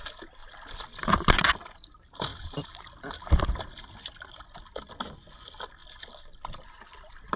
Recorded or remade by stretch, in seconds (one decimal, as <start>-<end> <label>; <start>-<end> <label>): 0.0-0.4 recorded; 0.4-1.5 remade; 1.5-2.3 recorded; 2.3-4.3 remade; 4.3-5.8 recorded; 5.8-7.4 remade